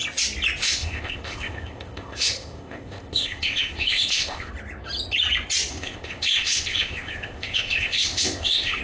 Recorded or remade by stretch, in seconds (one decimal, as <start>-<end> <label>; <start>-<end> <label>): 0.0-0.6 recorded; 0.6-4.5 remade; 4.5-5.7 recorded; 5.7-8.8 remade